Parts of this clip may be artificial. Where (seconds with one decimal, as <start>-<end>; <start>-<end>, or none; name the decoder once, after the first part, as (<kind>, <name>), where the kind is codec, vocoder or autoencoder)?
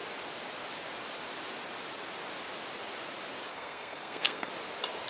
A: 3.5-4.5 (codec, SNAC)